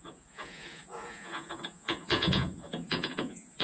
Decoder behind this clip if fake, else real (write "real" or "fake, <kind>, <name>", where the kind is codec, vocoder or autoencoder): fake, vocoder, Vocos